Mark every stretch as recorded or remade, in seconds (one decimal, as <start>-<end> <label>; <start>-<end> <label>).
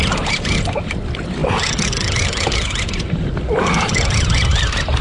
0.0-5.0 recorded